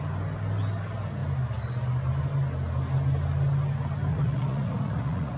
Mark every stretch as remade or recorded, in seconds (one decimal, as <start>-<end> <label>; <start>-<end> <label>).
0.0-4.1 recorded; 4.1-5.4 remade